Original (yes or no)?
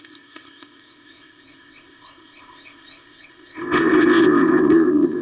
no